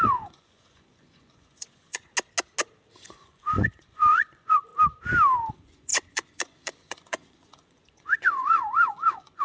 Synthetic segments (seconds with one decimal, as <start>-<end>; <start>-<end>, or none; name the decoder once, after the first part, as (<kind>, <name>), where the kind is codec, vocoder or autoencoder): 0.0-2.1 (vocoder, Vocos); 3.0-4.7; 5.5-9.4